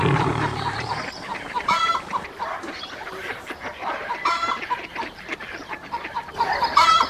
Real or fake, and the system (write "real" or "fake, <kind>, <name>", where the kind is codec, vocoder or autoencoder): fake, vocoder, BigVGAN v2